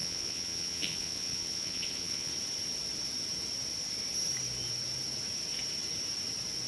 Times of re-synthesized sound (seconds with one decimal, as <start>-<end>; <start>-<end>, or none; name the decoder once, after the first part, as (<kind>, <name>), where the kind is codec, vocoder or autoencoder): 0.0-2.3 (vocoder, Vocos)